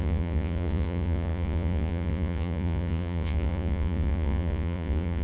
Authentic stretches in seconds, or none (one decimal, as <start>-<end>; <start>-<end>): none